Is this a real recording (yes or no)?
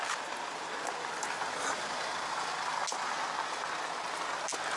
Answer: yes